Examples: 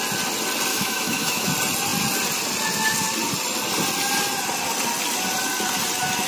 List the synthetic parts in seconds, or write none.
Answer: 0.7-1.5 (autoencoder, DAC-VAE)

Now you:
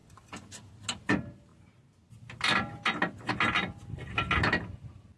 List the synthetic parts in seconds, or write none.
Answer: none